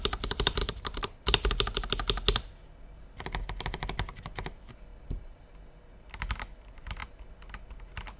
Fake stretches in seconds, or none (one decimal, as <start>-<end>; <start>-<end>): 0.6-1.2; 4.9-5.4